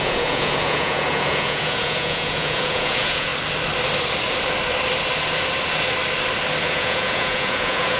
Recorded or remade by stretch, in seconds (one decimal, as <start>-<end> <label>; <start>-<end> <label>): 0.0-3.3 remade; 3.3-6.6 recorded; 6.6-8.0 remade